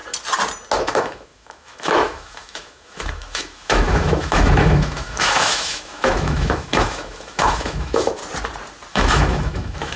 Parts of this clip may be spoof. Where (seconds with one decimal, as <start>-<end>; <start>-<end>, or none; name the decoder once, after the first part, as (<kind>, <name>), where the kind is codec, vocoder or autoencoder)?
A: 0.8-8.2 (autoencoder, DAC-VAE); 8.9-10.0